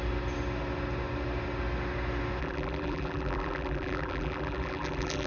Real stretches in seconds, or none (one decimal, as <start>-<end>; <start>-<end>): 0.0-2.4